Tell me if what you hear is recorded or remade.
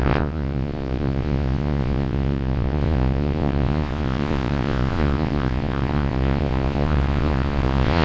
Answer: remade